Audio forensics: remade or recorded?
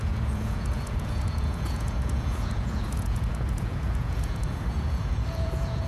remade